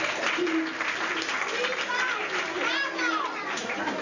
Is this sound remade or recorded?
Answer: recorded